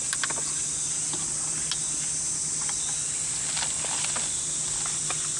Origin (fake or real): real